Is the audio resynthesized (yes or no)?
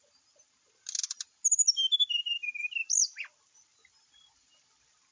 no